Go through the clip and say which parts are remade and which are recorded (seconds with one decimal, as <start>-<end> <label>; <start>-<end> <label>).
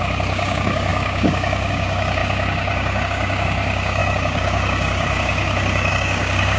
0.0-6.6 remade